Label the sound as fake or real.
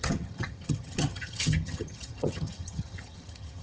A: fake